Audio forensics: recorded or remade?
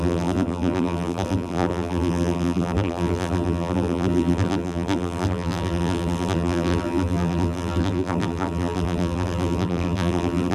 remade